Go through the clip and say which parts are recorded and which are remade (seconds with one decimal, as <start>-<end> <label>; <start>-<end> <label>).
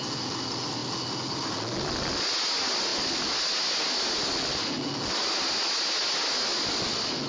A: 0.0-7.3 recorded